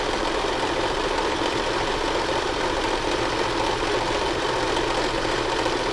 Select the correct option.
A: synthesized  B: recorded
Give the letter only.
A